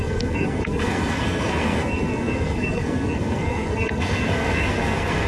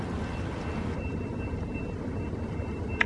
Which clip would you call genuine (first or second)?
second